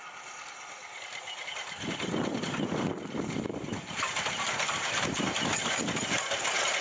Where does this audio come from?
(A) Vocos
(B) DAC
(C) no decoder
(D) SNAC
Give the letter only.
C